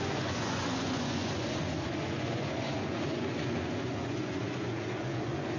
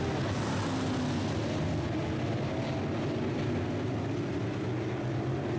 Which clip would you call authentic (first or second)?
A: second